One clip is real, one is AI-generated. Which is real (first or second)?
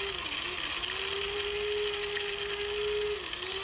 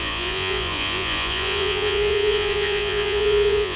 first